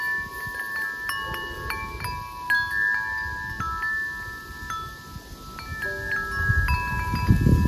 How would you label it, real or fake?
real